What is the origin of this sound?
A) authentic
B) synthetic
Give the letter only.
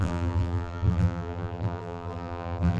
B